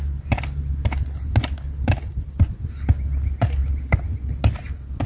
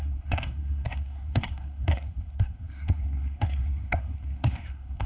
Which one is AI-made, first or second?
second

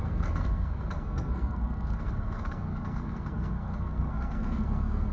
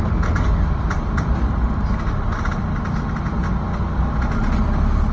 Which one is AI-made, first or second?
first